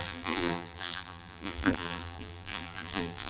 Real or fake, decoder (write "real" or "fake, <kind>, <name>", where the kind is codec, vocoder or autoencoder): fake, vocoder, BigVGAN v2